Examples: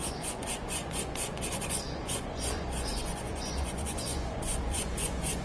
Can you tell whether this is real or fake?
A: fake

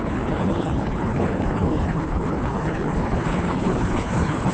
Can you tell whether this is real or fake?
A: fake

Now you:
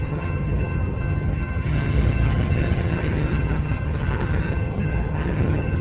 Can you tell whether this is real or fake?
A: fake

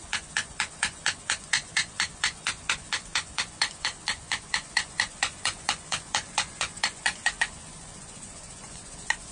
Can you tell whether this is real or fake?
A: fake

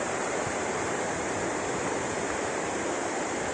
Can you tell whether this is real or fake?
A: fake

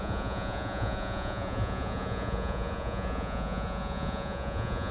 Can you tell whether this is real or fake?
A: fake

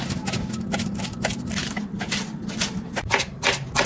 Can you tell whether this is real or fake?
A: real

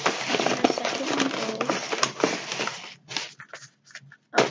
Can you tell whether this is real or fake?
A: real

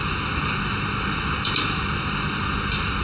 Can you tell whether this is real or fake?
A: real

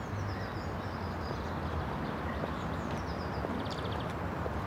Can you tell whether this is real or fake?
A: real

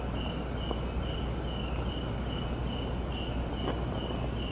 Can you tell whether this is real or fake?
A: real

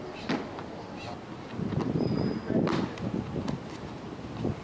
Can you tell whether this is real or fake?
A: real